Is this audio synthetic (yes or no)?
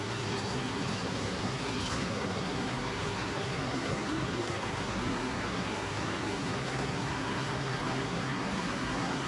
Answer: yes